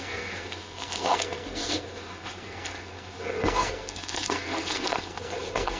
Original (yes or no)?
no